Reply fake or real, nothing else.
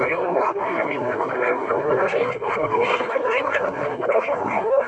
fake